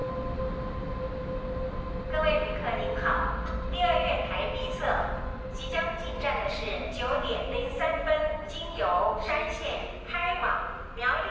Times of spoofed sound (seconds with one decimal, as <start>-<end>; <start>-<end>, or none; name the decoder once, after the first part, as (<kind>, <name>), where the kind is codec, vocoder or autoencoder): none